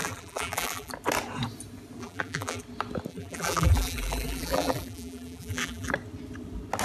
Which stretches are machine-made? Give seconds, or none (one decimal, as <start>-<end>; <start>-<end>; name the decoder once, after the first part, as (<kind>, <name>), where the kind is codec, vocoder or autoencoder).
0.0-0.9 (vocoder, BigVGAN v2); 2.0-2.6; 3.1-5.9